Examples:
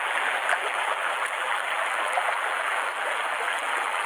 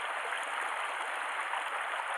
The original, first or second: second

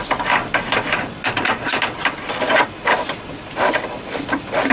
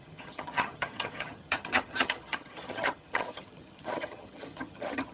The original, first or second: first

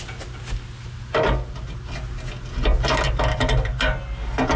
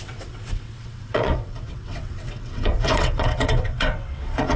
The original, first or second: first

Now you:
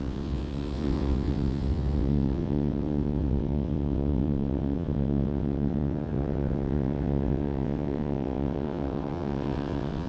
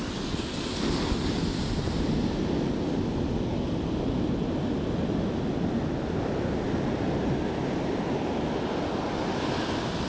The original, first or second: second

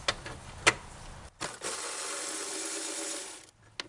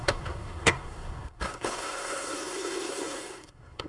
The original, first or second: first